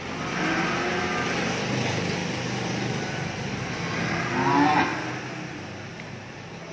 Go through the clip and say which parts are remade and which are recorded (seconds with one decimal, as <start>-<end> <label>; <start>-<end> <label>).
0.0-6.7 recorded